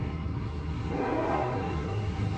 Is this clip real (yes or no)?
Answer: no